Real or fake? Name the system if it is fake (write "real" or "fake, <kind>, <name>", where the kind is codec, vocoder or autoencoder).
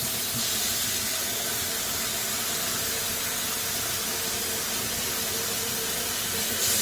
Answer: real